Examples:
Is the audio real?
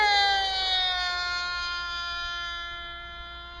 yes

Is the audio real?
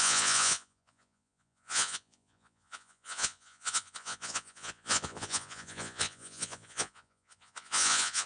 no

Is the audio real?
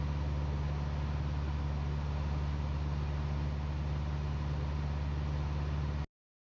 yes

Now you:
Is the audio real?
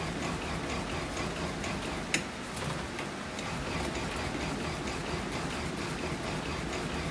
yes